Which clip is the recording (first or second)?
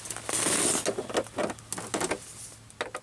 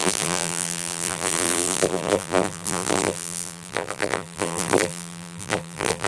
first